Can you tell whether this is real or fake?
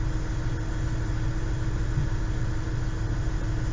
real